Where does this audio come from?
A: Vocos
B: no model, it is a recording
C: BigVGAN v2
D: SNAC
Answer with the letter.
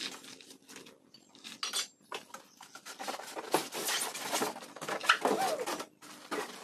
B